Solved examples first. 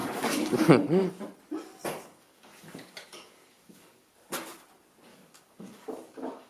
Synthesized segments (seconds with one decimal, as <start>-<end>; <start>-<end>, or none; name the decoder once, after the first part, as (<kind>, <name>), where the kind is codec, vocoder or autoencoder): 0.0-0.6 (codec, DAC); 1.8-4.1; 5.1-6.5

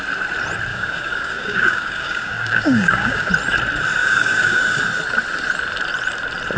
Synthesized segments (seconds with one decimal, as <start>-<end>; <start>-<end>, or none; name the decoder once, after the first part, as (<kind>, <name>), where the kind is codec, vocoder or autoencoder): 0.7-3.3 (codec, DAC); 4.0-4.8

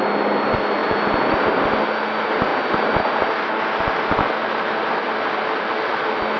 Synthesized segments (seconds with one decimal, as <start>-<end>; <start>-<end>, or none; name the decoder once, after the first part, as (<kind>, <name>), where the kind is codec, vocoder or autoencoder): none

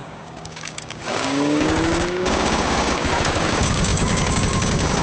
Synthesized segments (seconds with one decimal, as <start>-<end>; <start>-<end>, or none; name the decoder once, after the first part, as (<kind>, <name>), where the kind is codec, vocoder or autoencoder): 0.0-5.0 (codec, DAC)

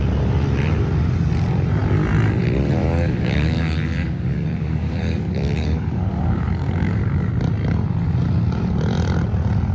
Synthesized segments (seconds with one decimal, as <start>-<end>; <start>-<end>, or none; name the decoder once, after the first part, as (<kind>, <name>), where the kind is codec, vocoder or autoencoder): 2.8-7.3 (codec, DAC)

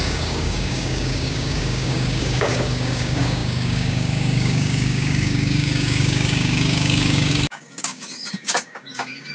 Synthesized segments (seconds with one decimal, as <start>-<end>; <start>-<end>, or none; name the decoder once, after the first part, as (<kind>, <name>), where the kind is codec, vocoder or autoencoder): 0.0-9.3 (codec, DAC)